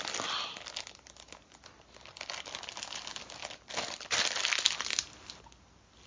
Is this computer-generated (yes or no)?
no